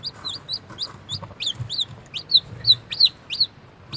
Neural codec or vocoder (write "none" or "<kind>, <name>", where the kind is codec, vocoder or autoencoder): none